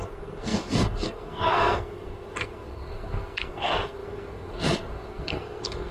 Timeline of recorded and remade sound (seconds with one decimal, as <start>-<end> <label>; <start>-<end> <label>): 0.0-5.9 remade